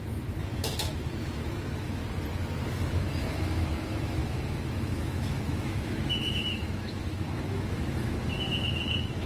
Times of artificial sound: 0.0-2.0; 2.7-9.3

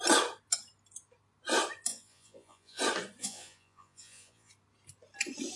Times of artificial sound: 1.9-2.8; 3.2-4.5

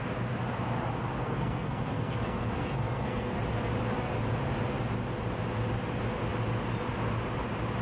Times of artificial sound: 1.2-3.4

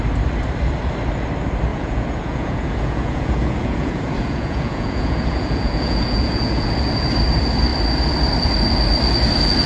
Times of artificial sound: 1.7-6.7

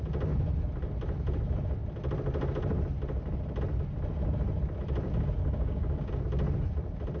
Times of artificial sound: 5.4-6.1

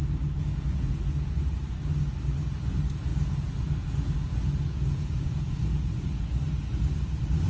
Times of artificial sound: 0.4-1.4; 3.1-5.9

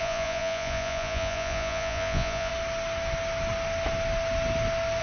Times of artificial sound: 0.0-2.5